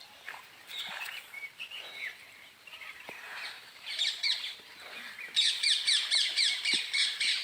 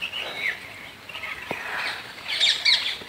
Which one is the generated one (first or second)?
first